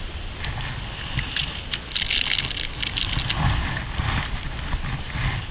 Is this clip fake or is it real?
real